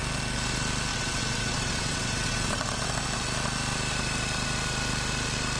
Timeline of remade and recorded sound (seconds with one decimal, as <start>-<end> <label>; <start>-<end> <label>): 0.0-0.9 recorded; 0.9-2.7 remade; 2.7-5.6 recorded